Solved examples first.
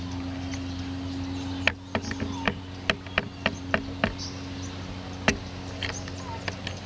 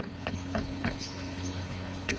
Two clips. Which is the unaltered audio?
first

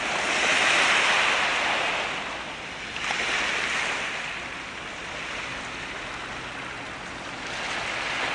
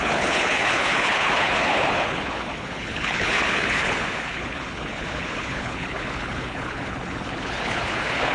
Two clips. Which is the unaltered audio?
first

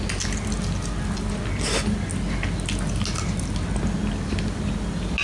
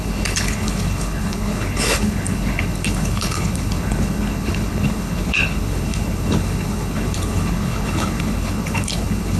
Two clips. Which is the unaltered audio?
first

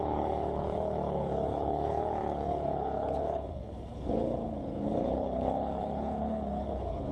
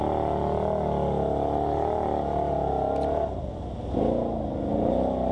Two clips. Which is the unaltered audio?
second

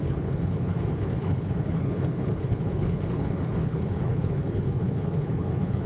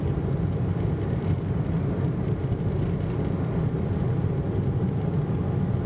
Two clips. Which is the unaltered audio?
second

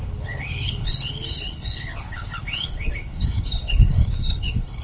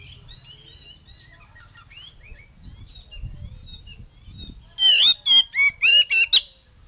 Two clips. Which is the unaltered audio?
second